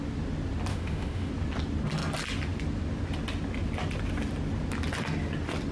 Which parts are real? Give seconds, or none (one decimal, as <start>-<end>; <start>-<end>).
0.0-0.7; 1.3-5.7